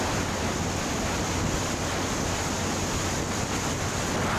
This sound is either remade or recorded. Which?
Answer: recorded